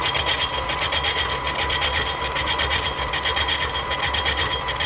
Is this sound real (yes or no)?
yes